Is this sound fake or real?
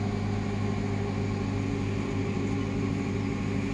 real